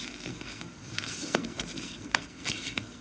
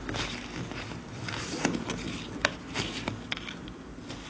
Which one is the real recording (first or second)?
second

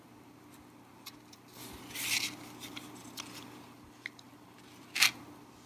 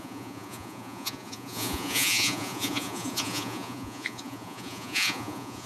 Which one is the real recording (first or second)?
first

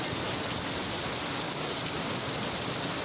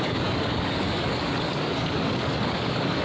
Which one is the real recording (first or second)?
first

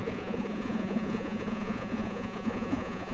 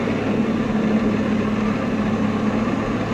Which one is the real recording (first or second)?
second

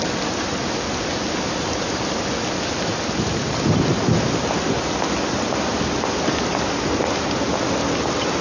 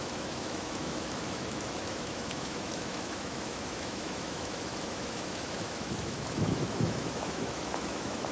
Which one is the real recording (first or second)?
first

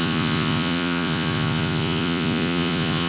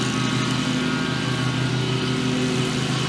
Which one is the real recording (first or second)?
second